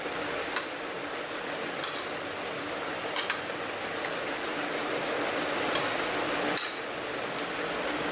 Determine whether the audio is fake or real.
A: real